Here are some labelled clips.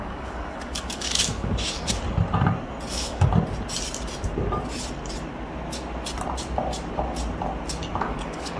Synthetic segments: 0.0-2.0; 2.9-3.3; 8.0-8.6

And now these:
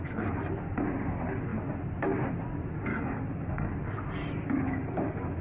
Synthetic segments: 2.9-3.7; 4.2-5.4